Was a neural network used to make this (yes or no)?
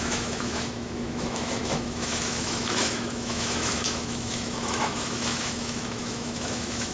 yes